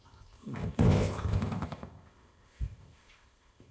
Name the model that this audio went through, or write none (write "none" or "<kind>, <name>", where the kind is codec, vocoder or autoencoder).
codec, ZipCodec